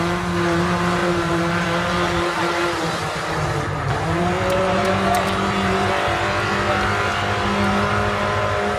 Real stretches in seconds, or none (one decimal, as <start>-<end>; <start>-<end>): 0.0-1.0; 5.9-8.8